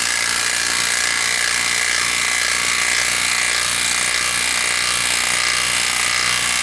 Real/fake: real